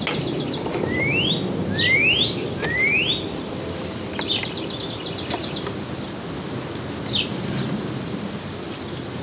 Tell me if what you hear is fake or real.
real